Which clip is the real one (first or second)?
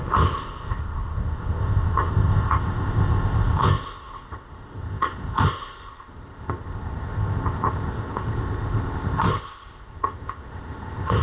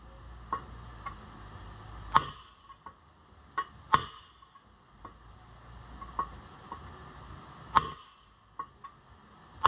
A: second